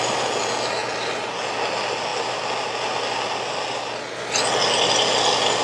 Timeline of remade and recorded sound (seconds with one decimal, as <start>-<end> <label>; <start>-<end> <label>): 0.0-5.6 recorded